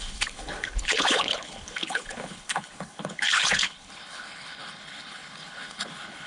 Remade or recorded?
remade